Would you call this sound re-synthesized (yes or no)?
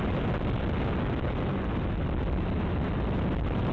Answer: no